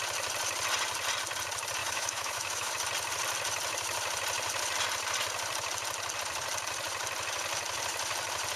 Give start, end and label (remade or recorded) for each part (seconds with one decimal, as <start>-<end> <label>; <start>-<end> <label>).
0.0-1.8 recorded; 1.8-2.7 remade; 2.7-8.6 recorded